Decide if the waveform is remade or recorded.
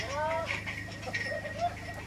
recorded